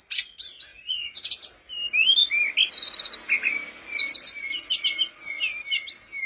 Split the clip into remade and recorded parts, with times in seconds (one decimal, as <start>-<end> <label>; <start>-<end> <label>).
0.0-0.7 recorded; 0.7-1.3 remade; 1.3-6.3 recorded

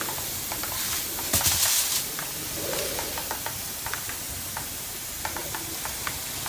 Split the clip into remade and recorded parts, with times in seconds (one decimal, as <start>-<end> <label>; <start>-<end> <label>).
0.0-6.5 recorded